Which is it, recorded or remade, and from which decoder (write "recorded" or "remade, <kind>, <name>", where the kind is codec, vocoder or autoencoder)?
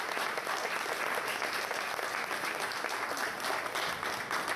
recorded